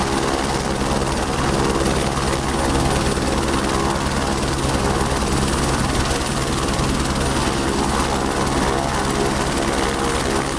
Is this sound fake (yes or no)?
no